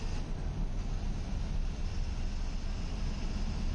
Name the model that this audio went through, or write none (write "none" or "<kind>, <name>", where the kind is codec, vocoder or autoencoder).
none